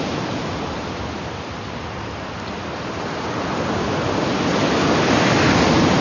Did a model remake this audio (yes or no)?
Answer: no